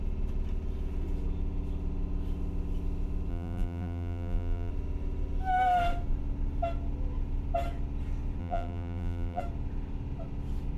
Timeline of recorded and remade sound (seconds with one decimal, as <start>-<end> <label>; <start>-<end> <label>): 0.0-3.3 recorded; 3.3-4.7 remade; 4.7-8.4 recorded; 8.4-9.4 remade; 9.4-10.8 recorded